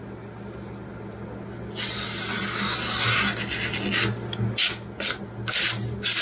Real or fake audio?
real